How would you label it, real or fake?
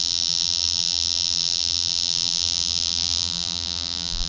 fake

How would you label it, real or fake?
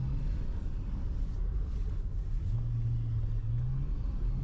real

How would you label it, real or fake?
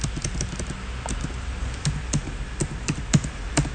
real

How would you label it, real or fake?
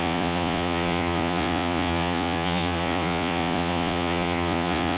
fake